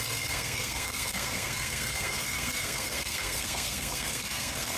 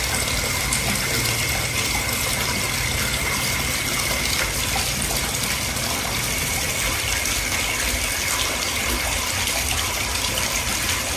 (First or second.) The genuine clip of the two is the second